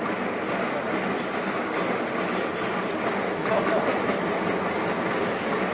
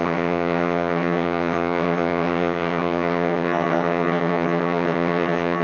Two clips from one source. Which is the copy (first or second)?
second